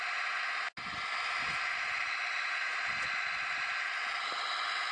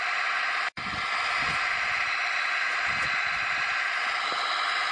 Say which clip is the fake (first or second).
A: second